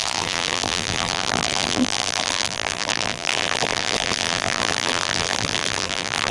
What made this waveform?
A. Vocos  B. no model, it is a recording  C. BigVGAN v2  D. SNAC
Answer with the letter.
C